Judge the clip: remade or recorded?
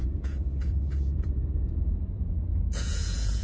remade